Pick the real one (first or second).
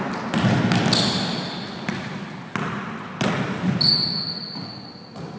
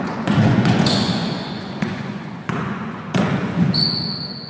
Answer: first